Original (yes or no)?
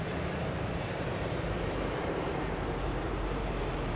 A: no